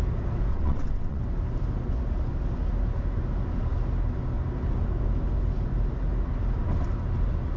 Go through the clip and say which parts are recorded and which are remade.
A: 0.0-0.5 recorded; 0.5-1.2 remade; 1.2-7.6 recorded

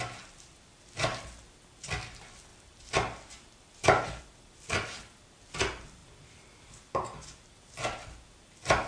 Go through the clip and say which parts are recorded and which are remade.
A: 0.0-8.9 recorded

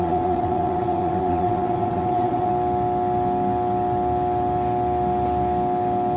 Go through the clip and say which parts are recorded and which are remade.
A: 0.0-2.5 remade; 2.5-6.2 recorded

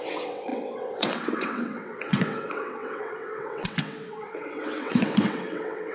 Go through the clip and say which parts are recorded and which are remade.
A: 0.0-5.9 remade

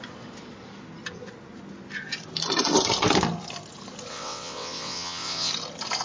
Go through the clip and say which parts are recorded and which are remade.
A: 0.0-4.1 recorded; 4.1-5.5 remade; 5.5-6.0 recorded

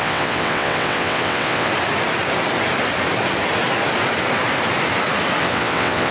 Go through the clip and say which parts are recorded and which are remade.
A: 0.0-1.7 remade; 1.7-5.4 recorded; 5.4-6.1 remade

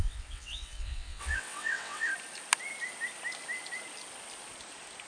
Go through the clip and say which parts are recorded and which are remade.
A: 0.0-2.1 remade; 2.1-5.1 recorded

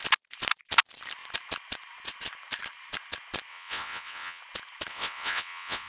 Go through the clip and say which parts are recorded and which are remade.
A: 0.0-3.5 recorded; 3.5-4.4 remade; 4.4-4.9 recorded; 4.9-5.9 remade